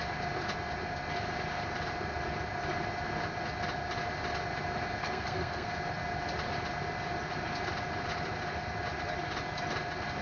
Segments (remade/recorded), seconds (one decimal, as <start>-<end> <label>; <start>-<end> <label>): 0.0-5.0 recorded; 5.0-5.7 remade; 5.7-10.2 recorded